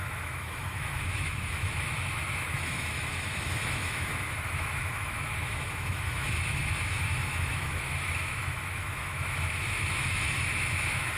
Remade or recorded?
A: remade